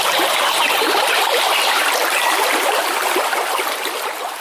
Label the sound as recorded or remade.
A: recorded